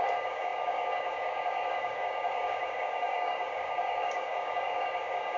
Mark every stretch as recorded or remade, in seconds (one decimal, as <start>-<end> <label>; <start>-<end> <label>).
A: 0.0-5.4 remade

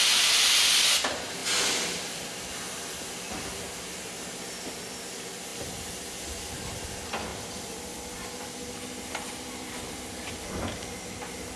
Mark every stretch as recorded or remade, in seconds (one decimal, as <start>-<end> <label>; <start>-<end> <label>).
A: 0.0-1.4 recorded; 1.4-3.6 remade; 3.6-5.5 recorded; 5.5-6.5 remade; 6.5-7.3 recorded; 7.3-10.5 remade; 10.5-11.6 recorded

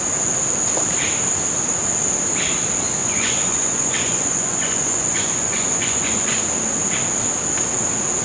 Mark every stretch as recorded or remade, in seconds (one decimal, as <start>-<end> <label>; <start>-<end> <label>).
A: 0.0-3.0 recorded; 3.0-6.4 remade; 6.4-8.2 recorded

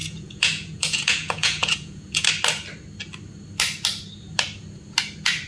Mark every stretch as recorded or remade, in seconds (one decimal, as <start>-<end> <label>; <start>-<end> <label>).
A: 0.0-2.3 remade; 2.3-5.5 recorded